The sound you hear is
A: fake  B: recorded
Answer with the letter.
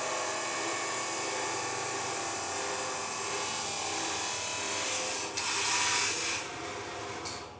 B